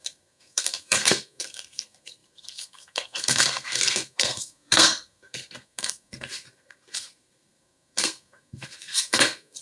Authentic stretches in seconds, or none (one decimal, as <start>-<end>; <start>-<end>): none